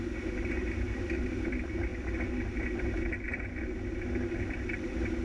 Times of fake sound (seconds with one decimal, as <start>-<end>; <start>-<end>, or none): none